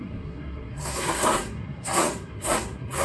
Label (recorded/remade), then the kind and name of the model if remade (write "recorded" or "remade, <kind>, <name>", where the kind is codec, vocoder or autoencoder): remade, codec, SNAC